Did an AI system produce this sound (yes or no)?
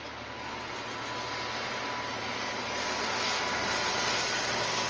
no